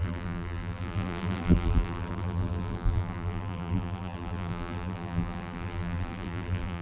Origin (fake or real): fake